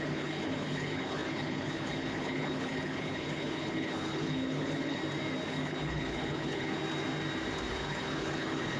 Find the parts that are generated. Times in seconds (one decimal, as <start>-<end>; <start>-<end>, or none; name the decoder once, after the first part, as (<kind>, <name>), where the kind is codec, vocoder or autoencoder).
0.0-5.0 (codec, HILCodec); 5.5-6.8; 7.7-8.8